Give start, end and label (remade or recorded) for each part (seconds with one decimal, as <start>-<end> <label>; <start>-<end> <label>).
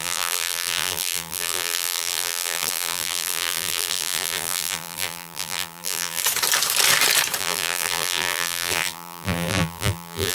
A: 0.0-6.2 remade; 6.2-7.4 recorded; 7.4-10.3 remade